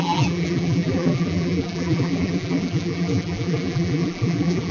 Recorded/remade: remade